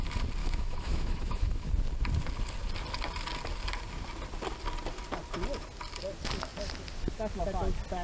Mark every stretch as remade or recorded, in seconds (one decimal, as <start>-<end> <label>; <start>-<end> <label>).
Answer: 0.0-0.4 recorded; 0.4-1.7 remade; 1.7-8.0 recorded